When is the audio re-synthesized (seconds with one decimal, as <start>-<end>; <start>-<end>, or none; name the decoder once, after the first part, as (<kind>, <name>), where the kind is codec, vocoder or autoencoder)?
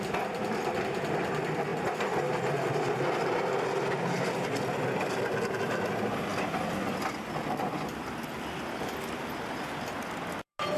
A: none